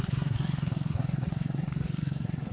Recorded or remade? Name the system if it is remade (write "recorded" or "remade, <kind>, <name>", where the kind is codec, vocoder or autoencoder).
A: remade, codec, SNAC